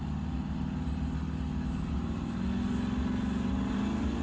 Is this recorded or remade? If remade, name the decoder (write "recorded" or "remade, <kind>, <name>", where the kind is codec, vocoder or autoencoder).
recorded